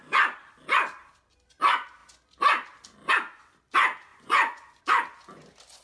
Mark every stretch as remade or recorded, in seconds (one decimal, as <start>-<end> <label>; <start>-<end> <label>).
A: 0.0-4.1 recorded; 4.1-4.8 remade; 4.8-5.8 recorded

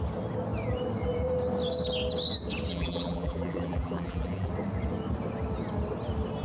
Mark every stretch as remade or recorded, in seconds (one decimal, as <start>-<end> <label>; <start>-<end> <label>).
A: 0.0-2.7 recorded; 2.7-4.5 remade; 4.5-6.4 recorded

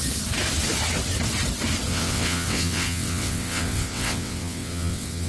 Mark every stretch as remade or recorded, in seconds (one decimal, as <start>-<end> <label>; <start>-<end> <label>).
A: 0.0-1.9 recorded; 1.9-5.3 remade

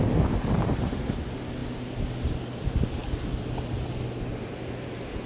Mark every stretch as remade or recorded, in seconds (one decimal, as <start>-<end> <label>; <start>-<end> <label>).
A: 0.0-5.3 recorded